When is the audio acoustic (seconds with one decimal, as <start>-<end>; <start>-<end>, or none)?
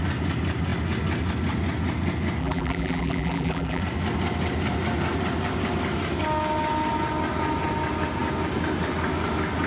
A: 0.0-2.4; 3.8-9.7